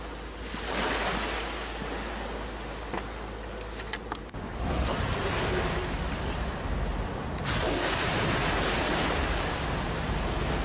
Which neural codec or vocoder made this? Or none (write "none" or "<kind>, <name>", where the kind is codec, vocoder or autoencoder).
none